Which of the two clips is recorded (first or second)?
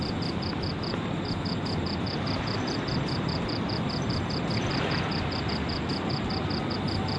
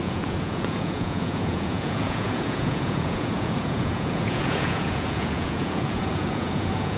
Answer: first